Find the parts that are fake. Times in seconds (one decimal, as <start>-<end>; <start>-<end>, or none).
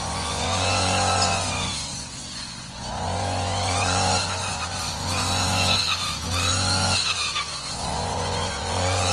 0.0-9.1